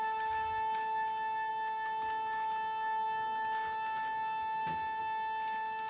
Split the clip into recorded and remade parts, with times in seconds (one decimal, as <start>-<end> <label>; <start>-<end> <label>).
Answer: 0.0-5.9 recorded